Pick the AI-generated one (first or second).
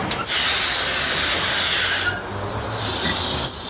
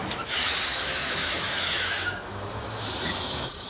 second